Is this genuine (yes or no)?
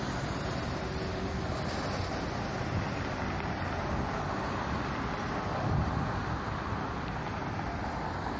yes